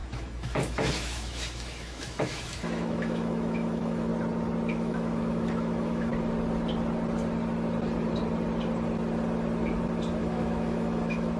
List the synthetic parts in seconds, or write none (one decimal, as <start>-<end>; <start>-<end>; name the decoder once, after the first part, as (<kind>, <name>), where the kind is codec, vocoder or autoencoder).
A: 0.0-4.1 (autoencoder, DAC-VAE); 4.7-6.1; 10.2-11.4